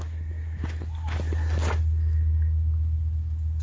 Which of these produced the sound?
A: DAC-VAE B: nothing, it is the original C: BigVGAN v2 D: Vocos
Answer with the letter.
B